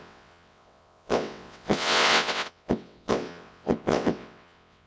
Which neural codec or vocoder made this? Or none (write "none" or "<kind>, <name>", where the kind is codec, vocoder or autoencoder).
vocoder, WaveNeXt